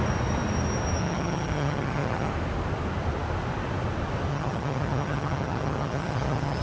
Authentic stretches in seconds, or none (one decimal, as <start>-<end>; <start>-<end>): 0.0-1.0; 2.3-4.3